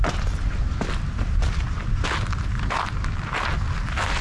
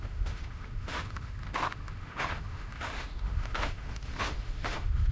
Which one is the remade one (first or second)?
second